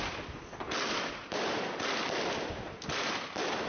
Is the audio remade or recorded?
recorded